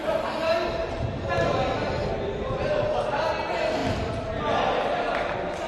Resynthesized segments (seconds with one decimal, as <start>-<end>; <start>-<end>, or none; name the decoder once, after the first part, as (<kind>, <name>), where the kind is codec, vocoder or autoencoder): none